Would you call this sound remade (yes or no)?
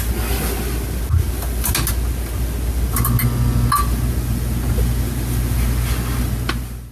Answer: no